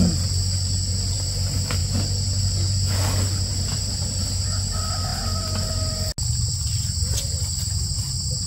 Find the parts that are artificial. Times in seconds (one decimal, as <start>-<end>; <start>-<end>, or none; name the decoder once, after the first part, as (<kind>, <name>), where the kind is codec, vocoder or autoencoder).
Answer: none